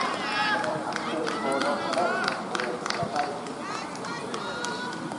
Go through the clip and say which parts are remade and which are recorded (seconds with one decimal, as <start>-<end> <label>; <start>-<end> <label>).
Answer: 0.0-5.2 recorded